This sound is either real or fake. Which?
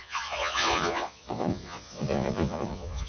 fake